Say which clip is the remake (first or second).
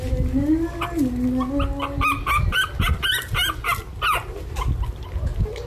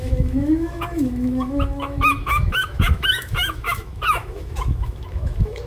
second